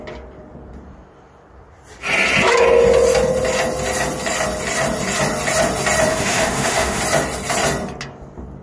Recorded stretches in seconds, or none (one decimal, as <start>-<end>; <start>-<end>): 0.0-6.1; 7.0-8.6